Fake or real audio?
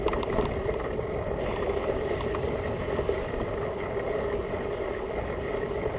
fake